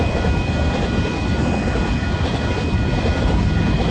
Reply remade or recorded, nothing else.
remade